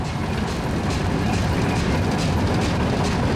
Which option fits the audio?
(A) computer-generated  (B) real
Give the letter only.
B